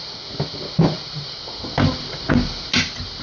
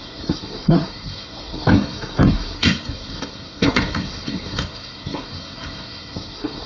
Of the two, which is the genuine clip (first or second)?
first